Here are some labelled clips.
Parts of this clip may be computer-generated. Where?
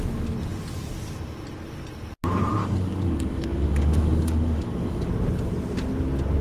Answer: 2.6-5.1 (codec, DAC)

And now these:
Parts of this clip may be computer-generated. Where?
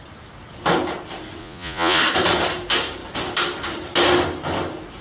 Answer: 1.4-2.0 (vocoder, Vocos)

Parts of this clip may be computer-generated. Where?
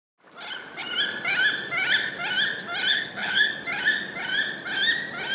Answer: 2.9-3.5 (codec, HILCodec)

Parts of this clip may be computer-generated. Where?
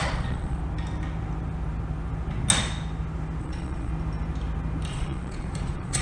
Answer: 0.0-0.6 (vocoder, Vocos); 3.4-3.9; 4.9-6.0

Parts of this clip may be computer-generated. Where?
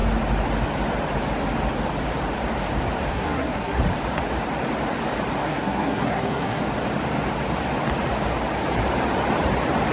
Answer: 3.1-3.8 (codec, SNAC); 5.4-6.6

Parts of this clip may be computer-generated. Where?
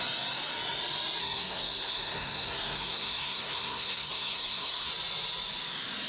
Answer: 1.2-4.9 (codec, SNAC)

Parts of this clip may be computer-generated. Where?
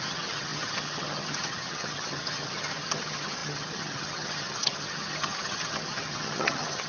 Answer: 0.0-6.9 (vocoder, HiFi-GAN)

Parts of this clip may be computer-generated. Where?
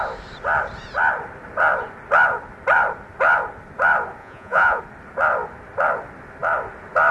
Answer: 4.2-4.8 (vocoder, Vocos)